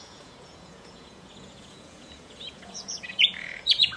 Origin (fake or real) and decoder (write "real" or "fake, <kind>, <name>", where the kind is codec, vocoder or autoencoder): fake, vocoder, Vocos